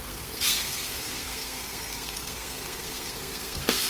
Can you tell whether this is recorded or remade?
remade